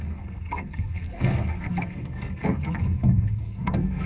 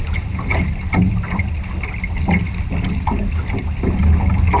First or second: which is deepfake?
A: first